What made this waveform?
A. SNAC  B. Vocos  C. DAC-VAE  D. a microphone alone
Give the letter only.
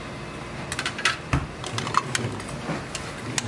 D